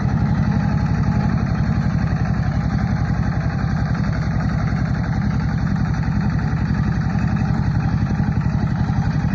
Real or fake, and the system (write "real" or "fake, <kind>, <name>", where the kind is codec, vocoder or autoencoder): fake, vocoder, BigVGAN v2